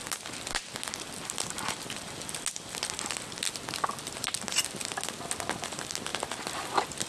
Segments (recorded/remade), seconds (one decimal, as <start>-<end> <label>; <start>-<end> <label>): 0.0-7.1 recorded